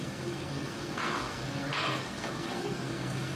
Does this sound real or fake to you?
fake